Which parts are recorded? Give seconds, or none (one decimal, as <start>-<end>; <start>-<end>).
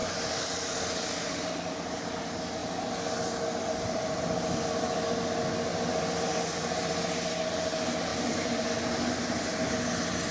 0.0-5.7; 6.9-8.1; 8.7-10.3